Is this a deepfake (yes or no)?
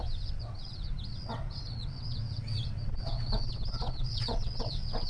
yes